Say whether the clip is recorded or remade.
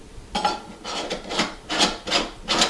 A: recorded